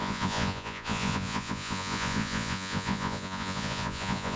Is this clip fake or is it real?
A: fake